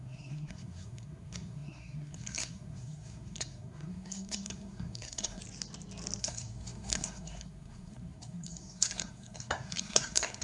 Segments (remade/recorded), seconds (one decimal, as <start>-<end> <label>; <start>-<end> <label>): 0.0-5.4 remade; 5.4-6.2 recorded; 6.2-10.4 remade